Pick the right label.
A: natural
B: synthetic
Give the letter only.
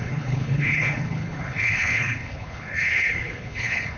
B